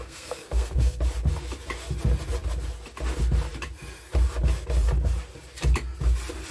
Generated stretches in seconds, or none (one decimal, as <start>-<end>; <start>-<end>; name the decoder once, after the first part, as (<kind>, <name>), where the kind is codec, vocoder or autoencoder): 0.0-1.0 (codec, SNAC)